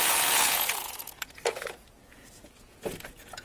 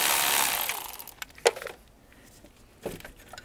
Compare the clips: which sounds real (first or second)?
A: second